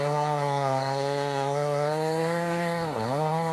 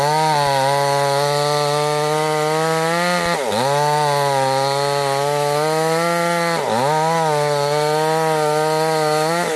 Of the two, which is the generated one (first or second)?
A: first